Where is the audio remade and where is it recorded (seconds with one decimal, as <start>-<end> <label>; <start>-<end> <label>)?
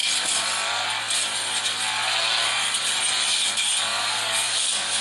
0.0-3.9 recorded; 3.9-5.0 remade